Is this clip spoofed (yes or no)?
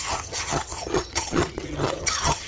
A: yes